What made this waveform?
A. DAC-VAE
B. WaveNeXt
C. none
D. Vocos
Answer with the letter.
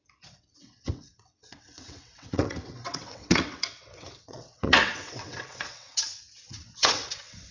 B